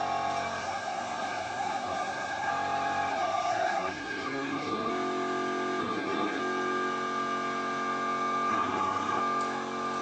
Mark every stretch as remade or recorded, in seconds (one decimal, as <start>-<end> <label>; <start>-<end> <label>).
0.0-0.6 recorded; 0.6-2.5 remade; 2.5-3.1 recorded; 3.1-4.9 remade; 4.9-5.8 recorded; 5.8-6.4 remade; 6.4-8.5 recorded; 8.5-9.2 remade; 9.2-10.0 recorded